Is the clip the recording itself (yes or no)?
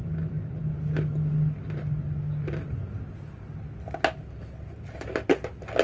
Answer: yes